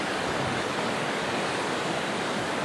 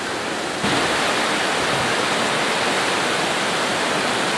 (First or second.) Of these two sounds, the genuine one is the second